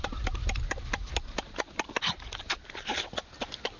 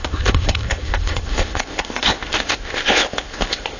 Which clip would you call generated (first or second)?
second